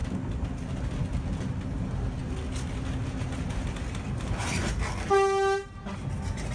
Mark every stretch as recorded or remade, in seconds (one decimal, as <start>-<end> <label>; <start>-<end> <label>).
0.0-6.5 recorded